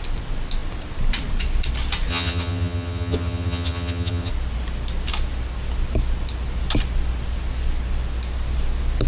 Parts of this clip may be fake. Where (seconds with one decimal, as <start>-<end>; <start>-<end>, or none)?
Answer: 2.1-4.3